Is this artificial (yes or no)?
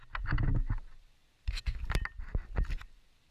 no